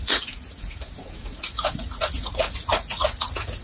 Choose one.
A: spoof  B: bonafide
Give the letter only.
A